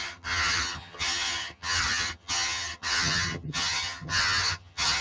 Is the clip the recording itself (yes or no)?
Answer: no